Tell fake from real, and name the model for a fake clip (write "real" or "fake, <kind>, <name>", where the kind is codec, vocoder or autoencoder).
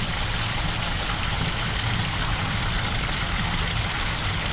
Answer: real